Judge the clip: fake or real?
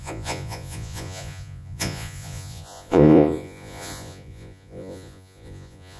fake